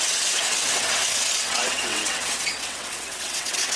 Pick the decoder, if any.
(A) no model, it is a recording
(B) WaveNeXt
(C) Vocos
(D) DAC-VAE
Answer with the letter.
B